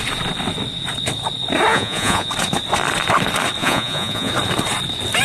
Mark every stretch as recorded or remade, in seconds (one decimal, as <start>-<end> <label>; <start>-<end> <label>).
0.0-1.7 recorded; 1.7-2.3 remade; 2.3-3.6 recorded; 3.6-4.3 remade; 4.3-5.2 recorded